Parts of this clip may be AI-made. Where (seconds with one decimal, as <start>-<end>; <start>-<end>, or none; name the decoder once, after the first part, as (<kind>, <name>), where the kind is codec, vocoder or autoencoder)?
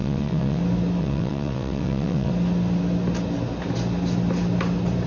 0.0-0.6 (vocoder, WaveNeXt); 1.0-2.3